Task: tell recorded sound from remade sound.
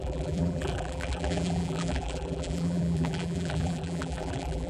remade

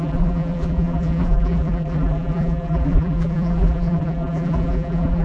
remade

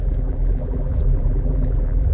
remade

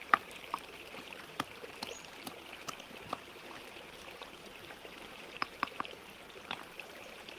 remade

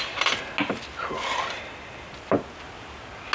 recorded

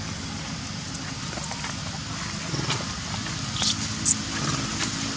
recorded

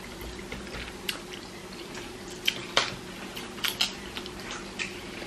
recorded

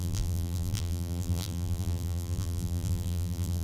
remade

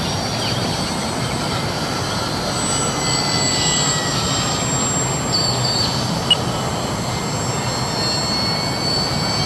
recorded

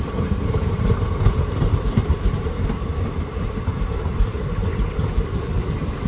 remade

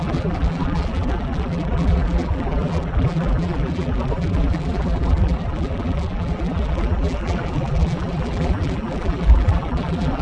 remade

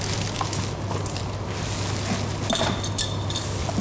recorded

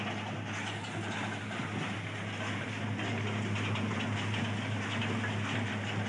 recorded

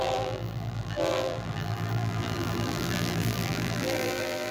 remade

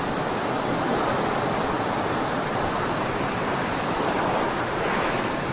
remade